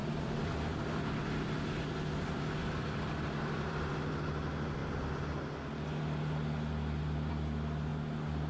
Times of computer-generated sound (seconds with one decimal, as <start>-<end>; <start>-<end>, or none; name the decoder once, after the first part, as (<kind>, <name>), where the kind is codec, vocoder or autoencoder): 0.0-1.5 (vocoder, BigVGAN v2); 2.6-3.9

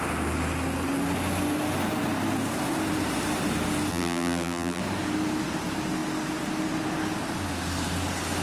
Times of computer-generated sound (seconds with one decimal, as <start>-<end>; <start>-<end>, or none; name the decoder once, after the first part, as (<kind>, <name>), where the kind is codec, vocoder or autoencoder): 3.9-4.8 (vocoder, BigVGAN v2)

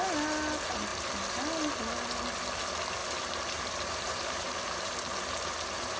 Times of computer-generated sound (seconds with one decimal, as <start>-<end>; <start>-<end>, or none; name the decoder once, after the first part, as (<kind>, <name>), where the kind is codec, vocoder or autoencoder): 3.0-4.9 (vocoder, BigVGAN v2)

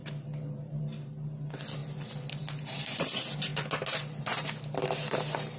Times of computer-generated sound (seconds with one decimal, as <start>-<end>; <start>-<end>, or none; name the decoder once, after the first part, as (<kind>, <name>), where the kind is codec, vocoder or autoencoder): none

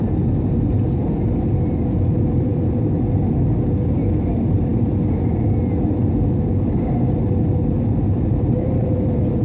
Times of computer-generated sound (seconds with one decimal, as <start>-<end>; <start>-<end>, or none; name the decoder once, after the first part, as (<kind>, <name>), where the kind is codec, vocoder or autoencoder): 2.5-3.6 (vocoder, BigVGAN v2)